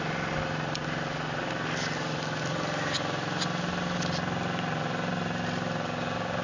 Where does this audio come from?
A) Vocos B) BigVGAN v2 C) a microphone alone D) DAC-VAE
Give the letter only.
C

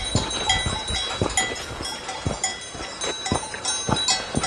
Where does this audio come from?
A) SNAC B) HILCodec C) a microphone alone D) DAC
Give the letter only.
C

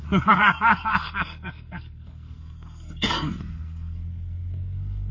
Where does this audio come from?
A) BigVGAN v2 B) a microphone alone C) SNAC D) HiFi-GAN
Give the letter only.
C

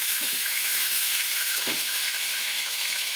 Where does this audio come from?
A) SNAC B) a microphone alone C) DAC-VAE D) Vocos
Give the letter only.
C